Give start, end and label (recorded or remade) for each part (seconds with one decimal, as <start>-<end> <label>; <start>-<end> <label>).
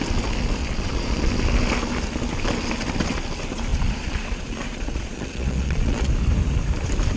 0.0-0.6 recorded; 0.6-1.3 remade; 1.3-3.7 recorded; 3.7-6.1 remade; 6.1-7.2 recorded